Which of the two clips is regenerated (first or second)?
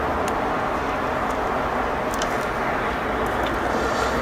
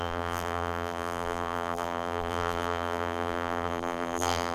second